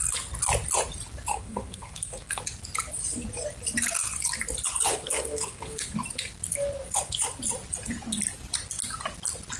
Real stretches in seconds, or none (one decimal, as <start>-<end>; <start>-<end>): 0.0-1.3; 2.4-4.9; 5.8-9.6